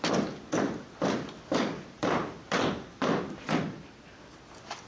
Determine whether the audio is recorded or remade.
recorded